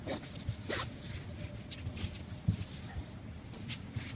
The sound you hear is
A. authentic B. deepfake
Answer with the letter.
A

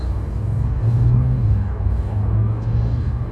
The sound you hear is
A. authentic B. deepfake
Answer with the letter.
B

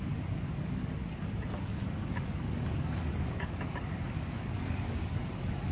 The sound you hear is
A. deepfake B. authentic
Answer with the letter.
A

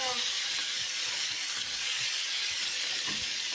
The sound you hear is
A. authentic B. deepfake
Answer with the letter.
B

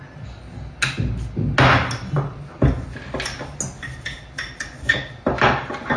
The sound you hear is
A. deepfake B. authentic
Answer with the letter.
B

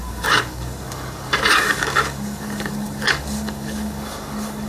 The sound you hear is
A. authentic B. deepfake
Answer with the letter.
B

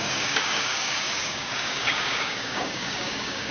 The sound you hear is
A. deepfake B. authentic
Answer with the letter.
A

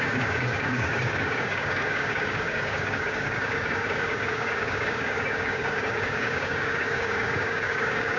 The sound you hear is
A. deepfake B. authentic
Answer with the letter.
A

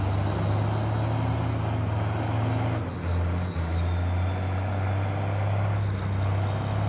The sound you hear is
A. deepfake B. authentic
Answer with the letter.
B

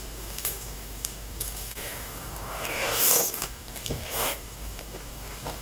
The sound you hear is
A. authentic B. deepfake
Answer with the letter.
B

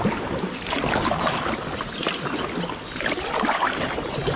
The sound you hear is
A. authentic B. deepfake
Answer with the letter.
A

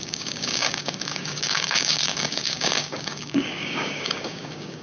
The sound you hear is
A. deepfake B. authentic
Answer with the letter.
A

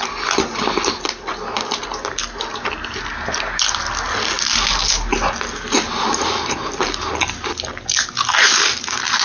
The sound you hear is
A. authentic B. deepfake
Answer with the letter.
A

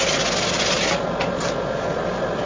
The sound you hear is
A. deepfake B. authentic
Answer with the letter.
B